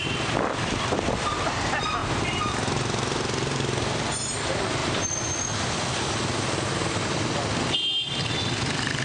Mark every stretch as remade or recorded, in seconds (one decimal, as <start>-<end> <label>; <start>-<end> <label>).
0.0-2.0 recorded; 2.0-2.5 remade; 2.5-9.0 recorded